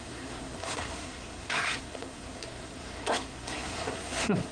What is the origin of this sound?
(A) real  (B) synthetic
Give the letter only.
B